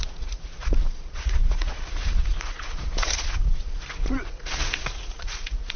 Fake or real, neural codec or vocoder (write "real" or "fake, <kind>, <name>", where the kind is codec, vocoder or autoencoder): fake, vocoder, Vocos